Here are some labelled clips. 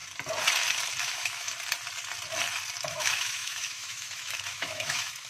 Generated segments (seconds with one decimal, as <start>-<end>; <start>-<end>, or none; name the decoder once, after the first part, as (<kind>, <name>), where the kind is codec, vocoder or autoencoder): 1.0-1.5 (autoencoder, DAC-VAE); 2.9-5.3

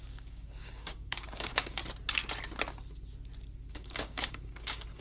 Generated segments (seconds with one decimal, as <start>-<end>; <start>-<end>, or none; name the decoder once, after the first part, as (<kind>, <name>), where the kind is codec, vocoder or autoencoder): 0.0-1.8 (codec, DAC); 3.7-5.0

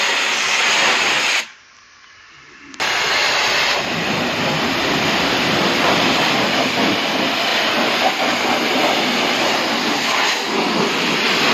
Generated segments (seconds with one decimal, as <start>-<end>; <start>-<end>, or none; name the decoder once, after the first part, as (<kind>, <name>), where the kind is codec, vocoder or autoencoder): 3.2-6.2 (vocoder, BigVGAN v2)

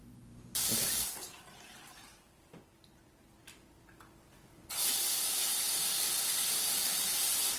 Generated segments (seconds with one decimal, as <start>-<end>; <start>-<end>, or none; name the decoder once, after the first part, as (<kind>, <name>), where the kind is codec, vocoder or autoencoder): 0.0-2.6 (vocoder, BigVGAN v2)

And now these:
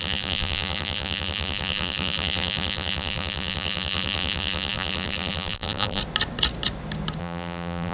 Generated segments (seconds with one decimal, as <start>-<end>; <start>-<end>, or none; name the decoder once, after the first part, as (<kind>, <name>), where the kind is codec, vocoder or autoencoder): 0.0-6.0 (vocoder, BigVGAN v2); 7.2-7.9

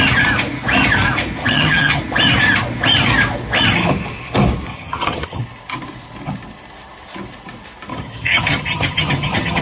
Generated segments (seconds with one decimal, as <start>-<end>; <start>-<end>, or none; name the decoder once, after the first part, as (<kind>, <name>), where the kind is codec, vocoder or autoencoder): 1.4-2.0 (vocoder, HiFi-GAN); 4.7-5.4; 7.9-9.6

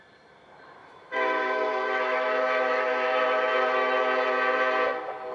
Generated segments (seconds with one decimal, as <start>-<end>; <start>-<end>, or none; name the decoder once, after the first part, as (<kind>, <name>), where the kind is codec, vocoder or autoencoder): 0.8-4.0 (autoencoder, DAC-VAE)